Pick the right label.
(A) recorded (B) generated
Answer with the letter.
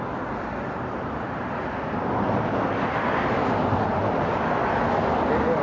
A